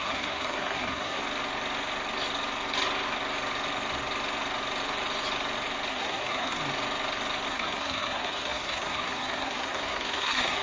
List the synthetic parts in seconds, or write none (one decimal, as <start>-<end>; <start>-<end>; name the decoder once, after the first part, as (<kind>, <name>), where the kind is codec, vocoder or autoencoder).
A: 0.0-1.2 (codec, SNAC); 5.9-6.6; 7.5-10.6